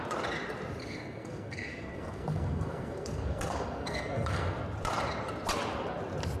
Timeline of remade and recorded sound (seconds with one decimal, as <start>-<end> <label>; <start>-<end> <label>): 0.0-0.8 recorded; 0.8-4.6 remade; 4.6-6.4 recorded